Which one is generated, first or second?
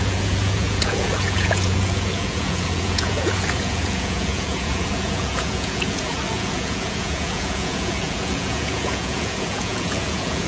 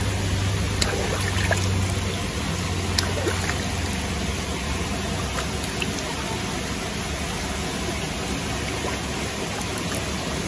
first